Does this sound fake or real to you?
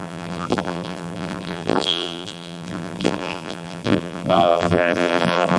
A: fake